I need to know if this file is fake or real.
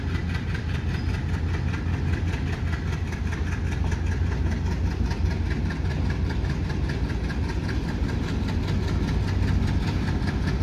real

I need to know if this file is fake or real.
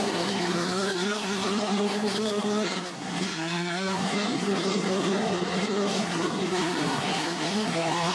fake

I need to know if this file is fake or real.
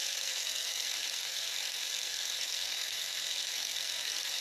fake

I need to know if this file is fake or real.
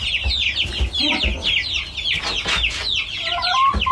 real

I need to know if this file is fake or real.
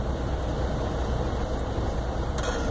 real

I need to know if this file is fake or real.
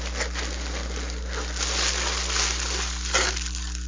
real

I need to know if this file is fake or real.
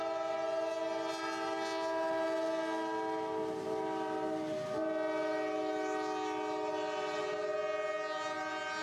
real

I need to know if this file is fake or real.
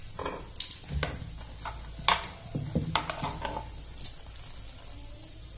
real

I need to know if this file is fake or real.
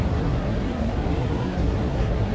fake